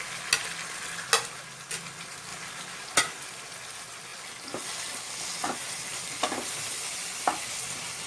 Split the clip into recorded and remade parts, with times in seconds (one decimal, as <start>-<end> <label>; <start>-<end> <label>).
0.0-8.1 recorded